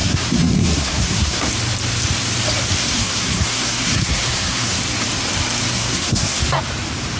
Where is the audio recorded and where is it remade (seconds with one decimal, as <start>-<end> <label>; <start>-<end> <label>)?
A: 0.0-1.5 remade; 1.5-2.8 recorded; 2.8-4.8 remade; 4.8-5.7 recorded; 5.7-6.4 remade; 6.4-7.2 recorded